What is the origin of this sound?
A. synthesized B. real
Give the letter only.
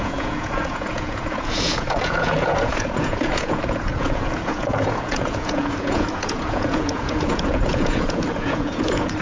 A